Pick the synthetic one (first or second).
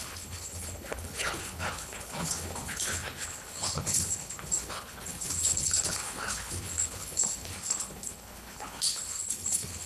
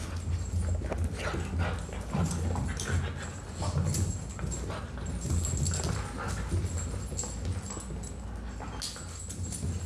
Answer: first